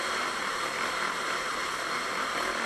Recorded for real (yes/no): no